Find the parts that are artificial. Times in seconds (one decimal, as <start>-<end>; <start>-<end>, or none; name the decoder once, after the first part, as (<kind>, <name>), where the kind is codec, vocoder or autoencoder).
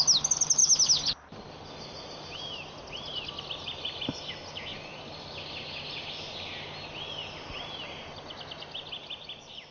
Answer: none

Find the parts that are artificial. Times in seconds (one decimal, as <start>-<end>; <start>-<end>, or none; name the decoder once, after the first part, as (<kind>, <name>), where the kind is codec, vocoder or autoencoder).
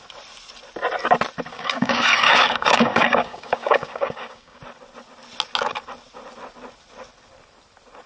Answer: 1.5-4.6 (codec, DAC)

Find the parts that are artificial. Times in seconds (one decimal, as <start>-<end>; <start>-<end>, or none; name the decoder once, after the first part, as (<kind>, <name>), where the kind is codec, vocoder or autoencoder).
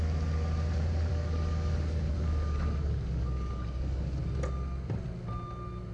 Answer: 1.1-4.2 (codec, DAC)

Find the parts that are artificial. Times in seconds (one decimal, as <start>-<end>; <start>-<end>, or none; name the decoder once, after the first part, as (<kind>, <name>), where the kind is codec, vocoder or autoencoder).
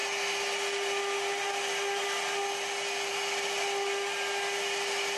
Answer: none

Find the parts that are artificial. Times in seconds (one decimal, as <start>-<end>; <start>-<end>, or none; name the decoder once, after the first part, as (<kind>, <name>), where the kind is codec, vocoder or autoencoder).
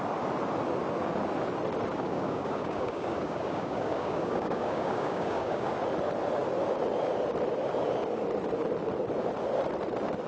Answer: 1.9-5.7 (codec, DAC)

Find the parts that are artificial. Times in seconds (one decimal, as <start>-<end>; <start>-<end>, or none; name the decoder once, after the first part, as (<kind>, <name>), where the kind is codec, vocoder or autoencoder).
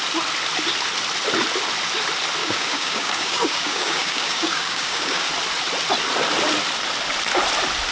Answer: 2.4-5.3 (codec, DAC)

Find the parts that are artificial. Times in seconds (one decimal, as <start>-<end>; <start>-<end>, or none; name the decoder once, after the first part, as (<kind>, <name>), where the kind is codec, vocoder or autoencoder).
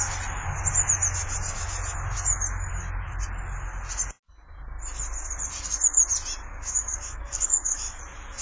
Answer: 6.5-8.0 (codec, DAC)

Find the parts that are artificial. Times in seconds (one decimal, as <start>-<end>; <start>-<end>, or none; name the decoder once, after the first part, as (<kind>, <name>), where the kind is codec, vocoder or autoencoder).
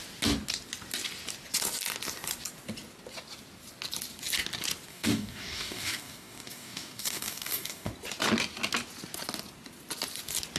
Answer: 4.9-7.9 (codec, DAC)